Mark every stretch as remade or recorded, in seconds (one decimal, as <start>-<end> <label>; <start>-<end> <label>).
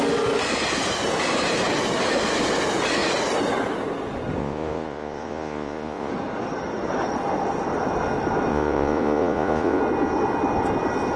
0.0-4.4 recorded; 4.4-6.1 remade; 6.1-8.5 recorded; 8.5-9.8 remade; 9.8-11.2 recorded